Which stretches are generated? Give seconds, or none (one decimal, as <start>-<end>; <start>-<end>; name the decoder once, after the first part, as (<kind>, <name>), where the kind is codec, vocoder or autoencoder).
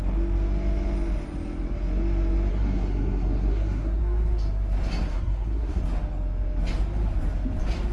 2.5-4.0 (codec, SNAC); 5.1-5.8